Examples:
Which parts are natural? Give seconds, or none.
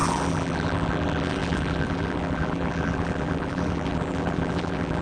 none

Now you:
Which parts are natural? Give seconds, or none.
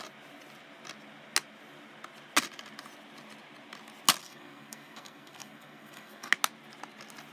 0.0-4.2; 6.3-7.3